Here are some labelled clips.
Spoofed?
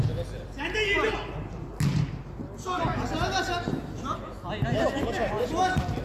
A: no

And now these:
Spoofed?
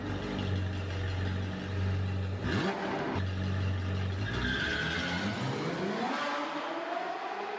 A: no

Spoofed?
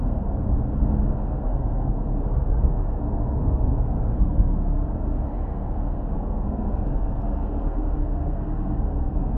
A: yes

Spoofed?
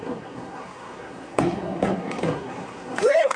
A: yes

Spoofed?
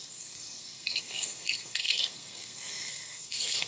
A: yes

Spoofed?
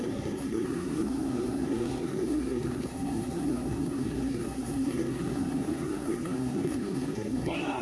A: yes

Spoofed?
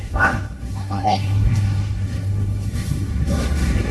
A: yes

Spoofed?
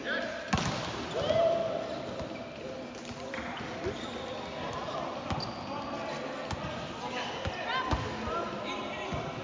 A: no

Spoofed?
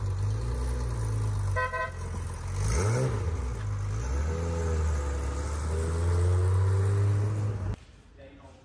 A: no